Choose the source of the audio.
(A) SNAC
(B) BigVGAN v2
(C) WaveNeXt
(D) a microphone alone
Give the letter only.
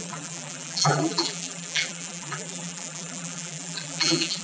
B